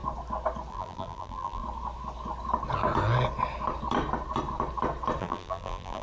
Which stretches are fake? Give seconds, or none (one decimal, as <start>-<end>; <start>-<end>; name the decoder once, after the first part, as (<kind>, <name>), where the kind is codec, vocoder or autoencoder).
0.7-1.6 (vocoder, BigVGAN v2); 5.2-6.0